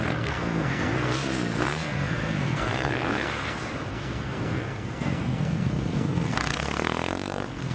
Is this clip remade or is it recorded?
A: remade